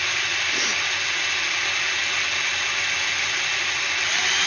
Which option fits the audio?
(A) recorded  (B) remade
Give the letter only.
A